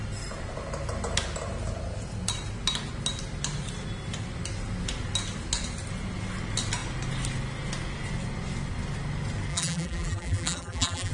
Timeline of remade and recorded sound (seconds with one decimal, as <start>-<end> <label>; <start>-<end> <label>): 0.0-9.5 recorded; 9.5-11.1 remade